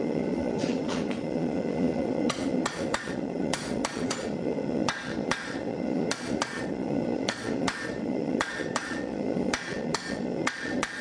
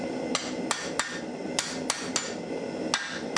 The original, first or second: second